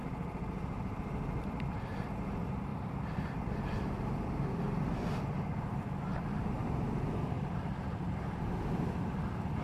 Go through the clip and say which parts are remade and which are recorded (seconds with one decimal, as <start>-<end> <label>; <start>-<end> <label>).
0.0-2.7 recorded; 2.7-4.6 remade; 4.6-6.1 recorded; 6.1-7.1 remade; 7.1-9.6 recorded